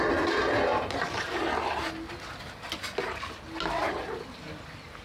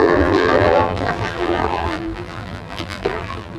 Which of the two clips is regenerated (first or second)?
second